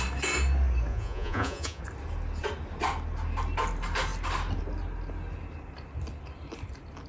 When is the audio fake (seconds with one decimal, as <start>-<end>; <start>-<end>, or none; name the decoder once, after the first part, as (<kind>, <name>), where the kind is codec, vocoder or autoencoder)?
0.9-1.8 (vocoder, Vocos)